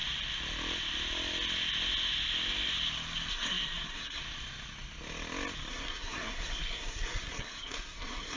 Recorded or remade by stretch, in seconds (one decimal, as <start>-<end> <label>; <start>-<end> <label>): 0.0-3.3 recorded; 3.3-4.2 remade; 4.2-5.7 recorded; 5.7-8.4 remade